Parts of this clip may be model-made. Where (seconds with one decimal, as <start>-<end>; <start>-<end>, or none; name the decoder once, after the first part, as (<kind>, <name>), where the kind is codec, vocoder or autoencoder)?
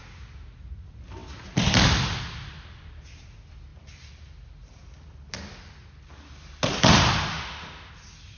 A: 7.3-7.9 (autoencoder, DAC-VAE)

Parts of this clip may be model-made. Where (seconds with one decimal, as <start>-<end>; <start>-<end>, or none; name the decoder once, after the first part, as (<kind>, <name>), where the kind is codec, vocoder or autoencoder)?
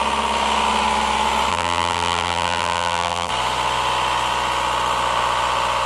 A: 1.5-3.3 (vocoder, BigVGAN v2)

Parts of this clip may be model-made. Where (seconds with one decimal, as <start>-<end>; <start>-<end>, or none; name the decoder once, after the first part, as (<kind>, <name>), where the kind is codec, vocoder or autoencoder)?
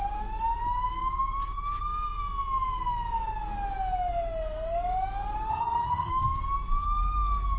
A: 5.5-6.1 (vocoder, HiFi-GAN)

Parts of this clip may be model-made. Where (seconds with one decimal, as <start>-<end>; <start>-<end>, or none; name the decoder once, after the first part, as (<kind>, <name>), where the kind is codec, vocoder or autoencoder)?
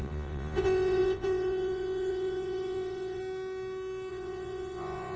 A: 0.0-3.2 (vocoder, Vocos); 4.1-5.2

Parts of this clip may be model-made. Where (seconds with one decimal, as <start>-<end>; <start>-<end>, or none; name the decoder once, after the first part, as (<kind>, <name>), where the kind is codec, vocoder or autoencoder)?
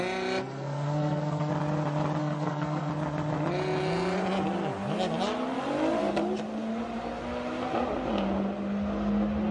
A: 0.4-1.5 (codec, SNAC); 2.2-2.9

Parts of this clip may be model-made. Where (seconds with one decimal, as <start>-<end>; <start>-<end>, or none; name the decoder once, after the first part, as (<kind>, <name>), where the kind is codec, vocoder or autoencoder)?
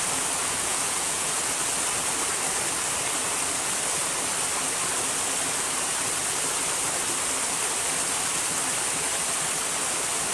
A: 0.4-1.4 (vocoder, Vocos)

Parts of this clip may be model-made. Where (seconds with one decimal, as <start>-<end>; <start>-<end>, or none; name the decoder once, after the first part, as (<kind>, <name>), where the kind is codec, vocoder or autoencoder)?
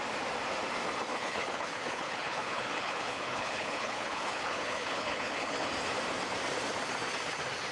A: 1.1-5.7 (codec, HILCodec)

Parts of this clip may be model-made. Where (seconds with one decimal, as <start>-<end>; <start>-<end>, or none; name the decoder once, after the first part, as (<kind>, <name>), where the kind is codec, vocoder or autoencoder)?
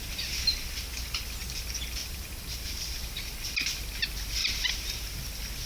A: 2.0-3.0 (vocoder, BigVGAN v2)